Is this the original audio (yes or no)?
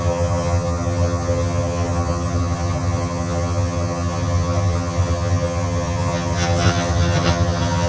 no